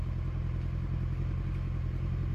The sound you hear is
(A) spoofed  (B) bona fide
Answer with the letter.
B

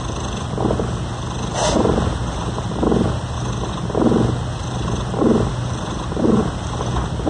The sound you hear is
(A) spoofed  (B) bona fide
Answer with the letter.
B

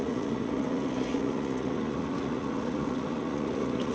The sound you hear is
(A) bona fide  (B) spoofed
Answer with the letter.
B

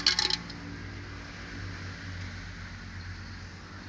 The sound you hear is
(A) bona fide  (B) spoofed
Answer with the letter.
A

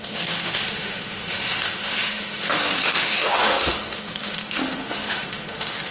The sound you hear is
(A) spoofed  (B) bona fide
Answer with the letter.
A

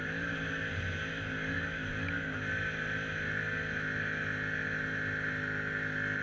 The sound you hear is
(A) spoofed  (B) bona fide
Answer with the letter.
B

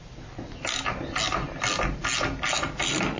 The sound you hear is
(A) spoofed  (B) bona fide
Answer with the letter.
B